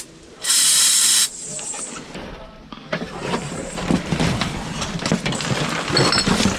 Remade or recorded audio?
remade